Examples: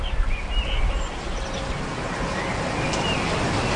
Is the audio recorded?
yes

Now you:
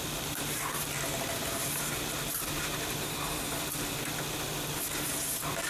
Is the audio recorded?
yes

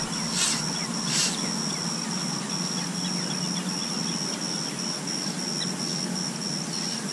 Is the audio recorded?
yes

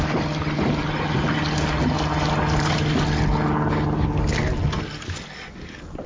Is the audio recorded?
yes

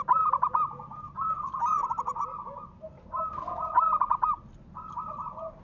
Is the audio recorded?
yes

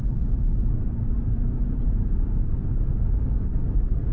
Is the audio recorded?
yes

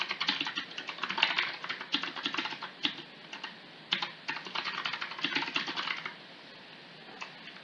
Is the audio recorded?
yes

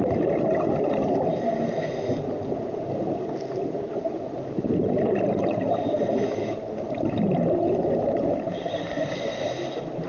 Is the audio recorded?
yes